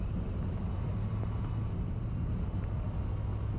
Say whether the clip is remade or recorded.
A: recorded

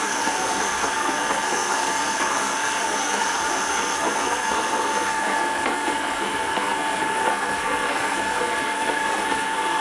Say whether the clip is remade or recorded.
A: remade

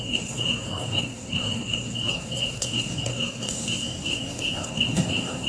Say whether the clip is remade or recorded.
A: remade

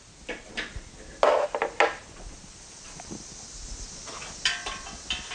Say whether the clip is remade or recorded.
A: recorded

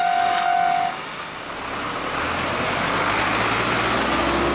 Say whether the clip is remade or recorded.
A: recorded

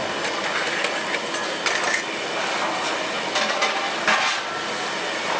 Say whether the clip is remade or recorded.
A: recorded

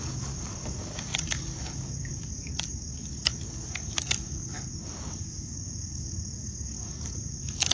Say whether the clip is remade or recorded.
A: remade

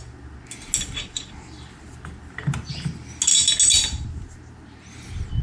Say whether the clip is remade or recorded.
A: recorded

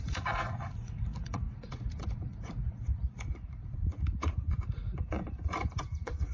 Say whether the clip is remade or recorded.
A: remade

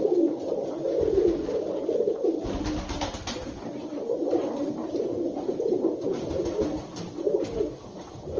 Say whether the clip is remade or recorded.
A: recorded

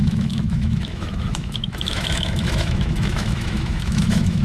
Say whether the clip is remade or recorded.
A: remade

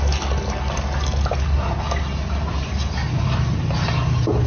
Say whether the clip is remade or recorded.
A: recorded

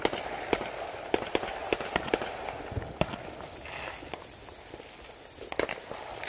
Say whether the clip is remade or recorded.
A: recorded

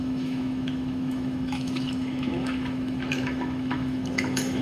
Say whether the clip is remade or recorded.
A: remade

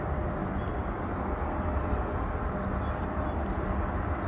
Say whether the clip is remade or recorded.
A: recorded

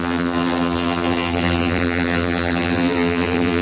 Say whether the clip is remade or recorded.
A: remade